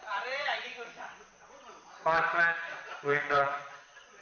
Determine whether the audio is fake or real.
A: fake